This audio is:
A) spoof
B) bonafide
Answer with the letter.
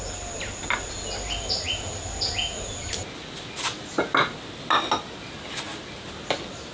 B